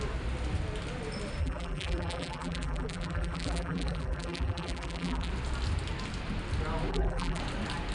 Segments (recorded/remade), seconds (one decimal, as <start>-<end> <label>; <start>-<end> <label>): 0.0-1.4 recorded; 1.4-5.3 remade; 5.3-6.9 recorded; 6.9-7.4 remade; 7.4-7.9 recorded